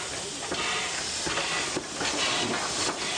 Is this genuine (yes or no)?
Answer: yes